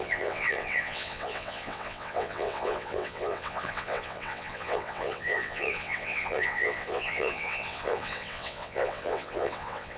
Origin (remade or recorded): remade